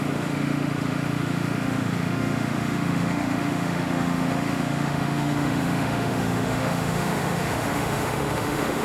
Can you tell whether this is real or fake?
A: fake